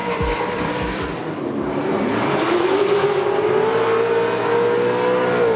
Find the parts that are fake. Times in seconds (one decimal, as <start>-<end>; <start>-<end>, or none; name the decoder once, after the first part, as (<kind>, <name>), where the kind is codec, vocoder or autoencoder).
0.0-3.4 (vocoder, BigVGAN v2)